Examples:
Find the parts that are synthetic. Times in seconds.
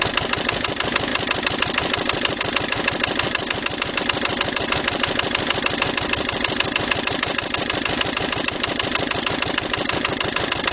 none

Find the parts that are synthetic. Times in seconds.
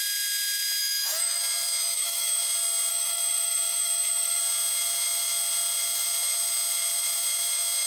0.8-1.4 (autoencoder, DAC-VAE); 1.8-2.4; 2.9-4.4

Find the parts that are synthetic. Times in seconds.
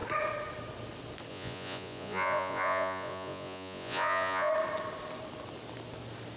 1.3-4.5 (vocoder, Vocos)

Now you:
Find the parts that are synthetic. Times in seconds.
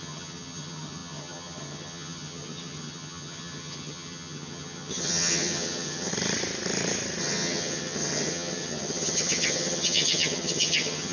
0.0-6.1 (vocoder, HiFi-GAN); 7.2-11.1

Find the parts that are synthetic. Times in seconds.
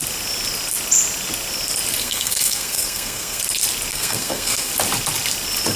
2.0-3.4 (codec, SNAC); 3.9-4.7